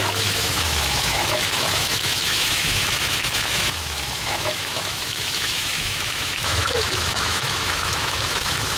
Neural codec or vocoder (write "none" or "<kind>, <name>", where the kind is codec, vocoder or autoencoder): autoencoder, DAC-VAE